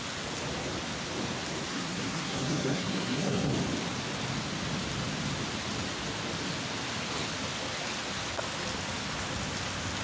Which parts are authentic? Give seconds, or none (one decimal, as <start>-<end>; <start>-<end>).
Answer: 0.0-1.7; 3.5-10.0